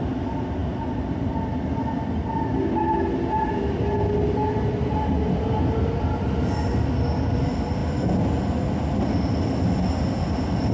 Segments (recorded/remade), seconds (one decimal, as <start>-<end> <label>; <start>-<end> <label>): 0.0-10.7 recorded